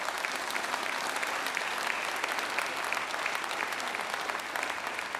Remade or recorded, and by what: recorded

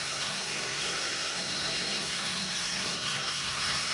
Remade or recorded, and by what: remade, codec, SNAC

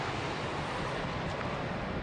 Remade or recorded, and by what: recorded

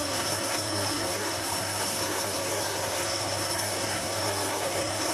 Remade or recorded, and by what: remade, codec, SNAC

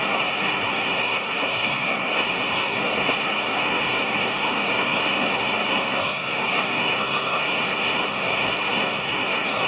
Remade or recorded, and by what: remade, codec, SNAC